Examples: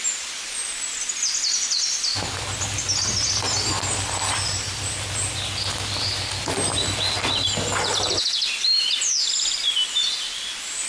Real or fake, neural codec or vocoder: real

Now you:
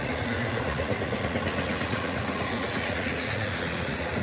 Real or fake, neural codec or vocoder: fake, vocoder, Vocos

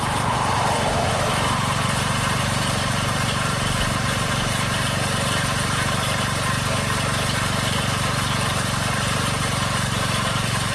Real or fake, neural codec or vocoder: fake, vocoder, BigVGAN v2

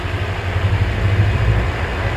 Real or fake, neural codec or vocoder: real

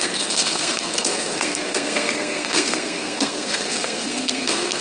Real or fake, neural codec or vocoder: fake, codec, SNAC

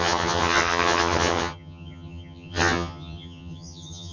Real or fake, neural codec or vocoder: fake, vocoder, HiFi-GAN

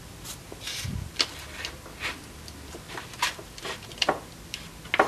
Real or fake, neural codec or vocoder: real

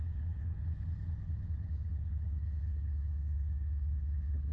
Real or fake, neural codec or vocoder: fake, codec, HILCodec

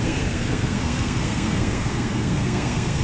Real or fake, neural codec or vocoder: fake, codec, SNAC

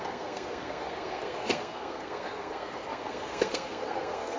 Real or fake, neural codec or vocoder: fake, codec, SNAC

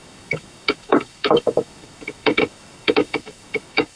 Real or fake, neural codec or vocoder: fake, codec, DAC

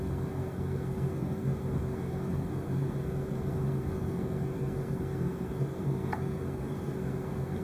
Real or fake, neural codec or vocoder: fake, codec, SNAC